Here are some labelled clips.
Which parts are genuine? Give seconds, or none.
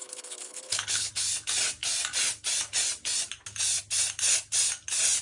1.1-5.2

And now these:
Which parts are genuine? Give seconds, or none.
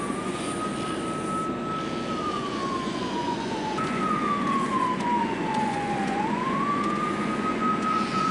0.7-2.2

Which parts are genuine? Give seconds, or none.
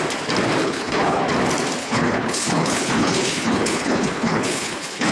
0.0-0.6; 1.2-1.8